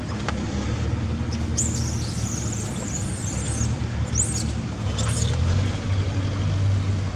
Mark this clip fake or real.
real